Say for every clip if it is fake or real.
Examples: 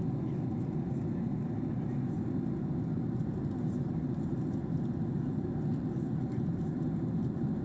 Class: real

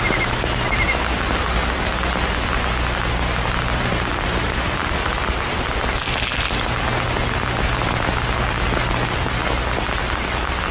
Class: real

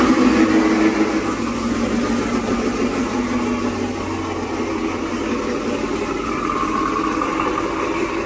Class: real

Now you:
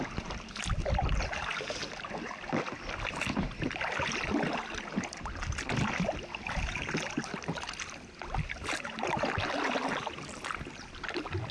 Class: real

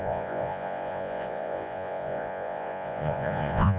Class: fake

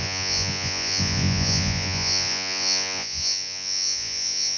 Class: fake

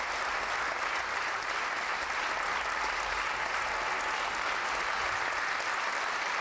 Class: real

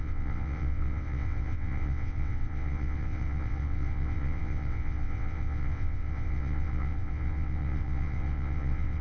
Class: fake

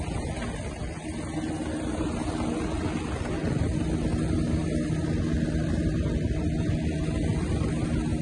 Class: real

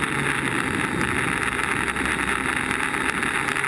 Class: real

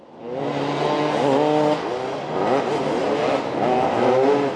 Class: real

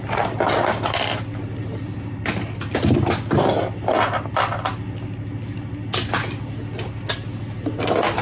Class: real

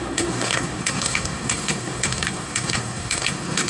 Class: fake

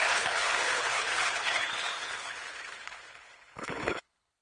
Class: fake